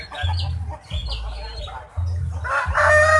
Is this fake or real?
real